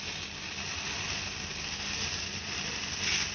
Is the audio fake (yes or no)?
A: no